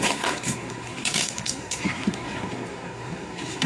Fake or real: fake